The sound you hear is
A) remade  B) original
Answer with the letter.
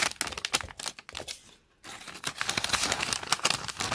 B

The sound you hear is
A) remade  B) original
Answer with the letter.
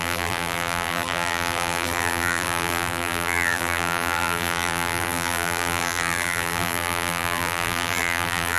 A